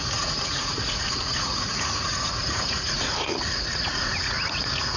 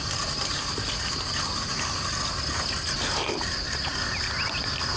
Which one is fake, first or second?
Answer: first